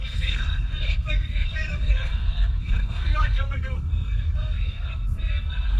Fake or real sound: fake